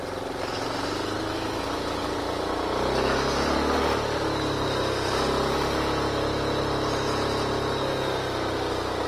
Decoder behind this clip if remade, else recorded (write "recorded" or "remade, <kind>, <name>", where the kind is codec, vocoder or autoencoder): recorded